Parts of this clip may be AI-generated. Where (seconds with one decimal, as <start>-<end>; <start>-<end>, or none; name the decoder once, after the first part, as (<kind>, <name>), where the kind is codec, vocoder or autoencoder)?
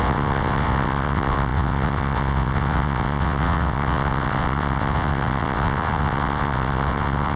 0.0-7.4 (vocoder, WaveNeXt)